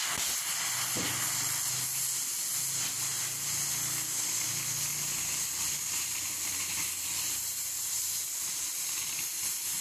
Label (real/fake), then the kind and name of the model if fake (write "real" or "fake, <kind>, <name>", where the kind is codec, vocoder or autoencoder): real